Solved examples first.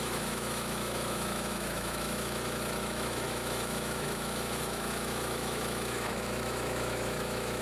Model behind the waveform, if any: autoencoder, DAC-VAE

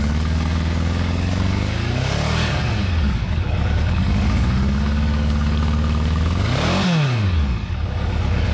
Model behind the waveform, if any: codec, DAC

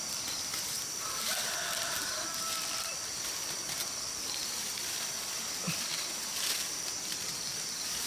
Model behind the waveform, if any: vocoder, BigVGAN v2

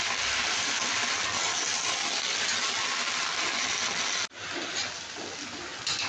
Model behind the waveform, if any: none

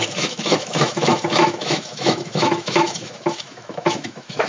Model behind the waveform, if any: autoencoder, DAC-VAE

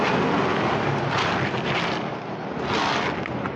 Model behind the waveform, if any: none